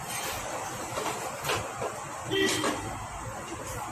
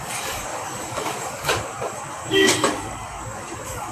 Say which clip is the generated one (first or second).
second